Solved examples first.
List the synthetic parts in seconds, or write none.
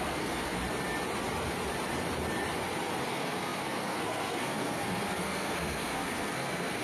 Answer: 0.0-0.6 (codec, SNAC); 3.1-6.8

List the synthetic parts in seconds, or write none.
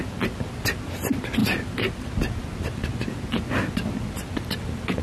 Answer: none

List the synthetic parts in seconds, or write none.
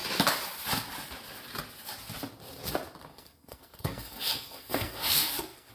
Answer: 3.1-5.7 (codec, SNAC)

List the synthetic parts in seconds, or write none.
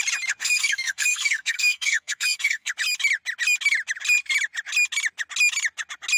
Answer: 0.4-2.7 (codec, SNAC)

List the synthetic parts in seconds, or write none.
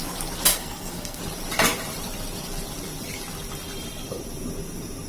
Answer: 0.5-1.2 (codec, SNAC)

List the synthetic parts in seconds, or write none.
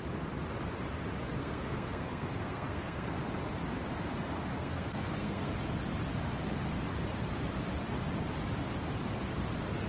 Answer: 1.4-3.2 (codec, SNAC); 4.5-5.5